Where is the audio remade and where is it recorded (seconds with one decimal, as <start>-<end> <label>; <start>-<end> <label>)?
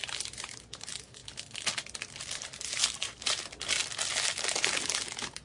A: 0.0-1.2 remade; 1.2-2.3 recorded; 2.3-3.8 remade; 3.8-4.5 recorded; 4.5-5.4 remade